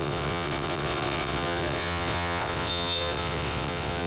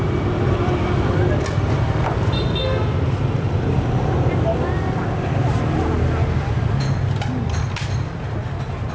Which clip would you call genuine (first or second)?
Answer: second